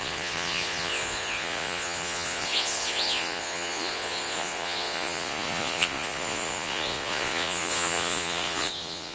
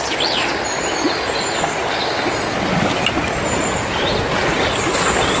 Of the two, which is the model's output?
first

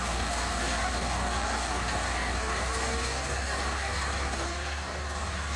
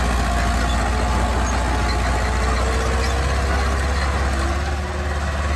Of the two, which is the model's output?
first